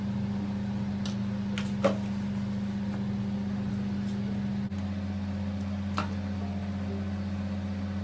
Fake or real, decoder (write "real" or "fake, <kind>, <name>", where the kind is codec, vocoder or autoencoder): real